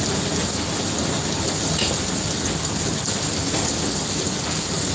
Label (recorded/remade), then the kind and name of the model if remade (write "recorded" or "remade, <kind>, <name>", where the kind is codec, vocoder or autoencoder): recorded